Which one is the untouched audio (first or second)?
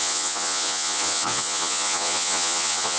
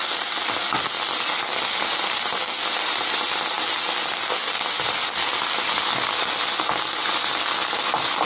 second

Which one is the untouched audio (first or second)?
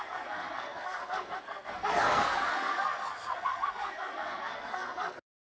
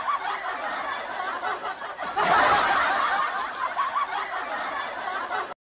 second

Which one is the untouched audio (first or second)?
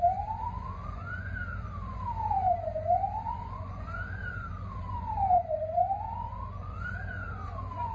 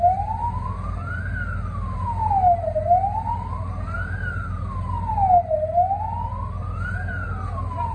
second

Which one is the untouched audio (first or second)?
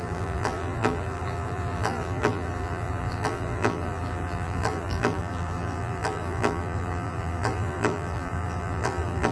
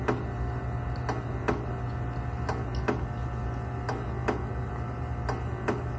second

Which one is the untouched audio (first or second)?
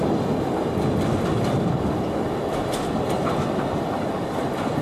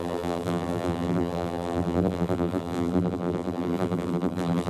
first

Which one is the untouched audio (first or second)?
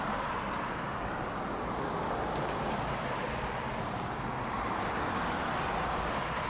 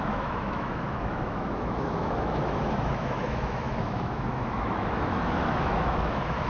first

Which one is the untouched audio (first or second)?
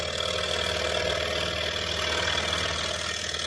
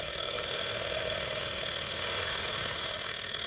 first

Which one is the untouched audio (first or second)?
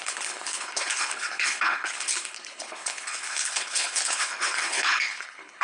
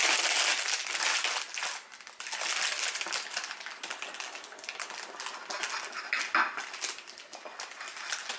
second